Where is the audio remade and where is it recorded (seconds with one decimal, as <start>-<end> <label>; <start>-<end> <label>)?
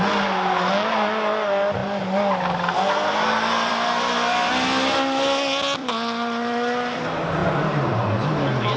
0.0-5.8 recorded; 5.8-7.0 remade; 7.0-7.4 recorded; 7.4-8.0 remade; 8.0-8.8 recorded